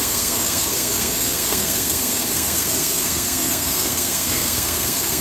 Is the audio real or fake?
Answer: fake